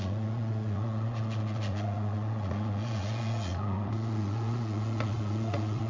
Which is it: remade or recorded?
remade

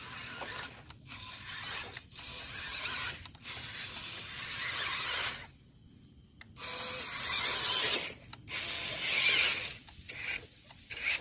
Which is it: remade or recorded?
recorded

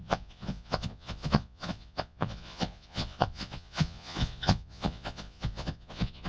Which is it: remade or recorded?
remade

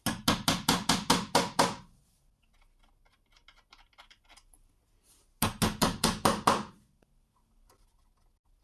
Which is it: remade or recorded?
recorded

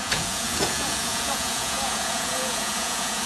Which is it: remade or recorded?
remade